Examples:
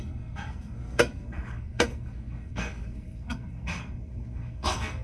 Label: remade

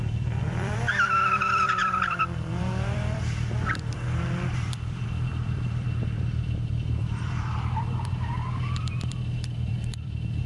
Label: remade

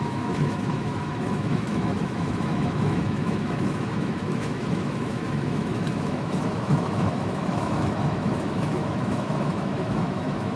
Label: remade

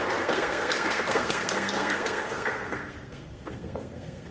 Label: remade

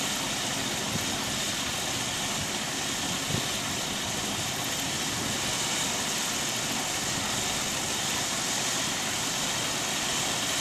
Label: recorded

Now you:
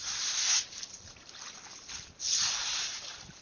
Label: recorded